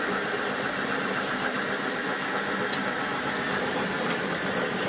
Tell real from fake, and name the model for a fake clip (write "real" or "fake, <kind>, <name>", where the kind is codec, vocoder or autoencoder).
real